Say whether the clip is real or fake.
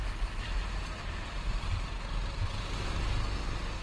real